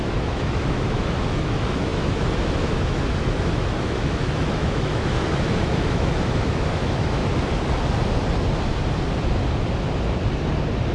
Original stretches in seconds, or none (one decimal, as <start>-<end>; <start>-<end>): 7.2-10.9